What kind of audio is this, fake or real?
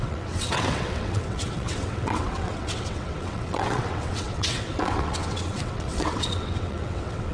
fake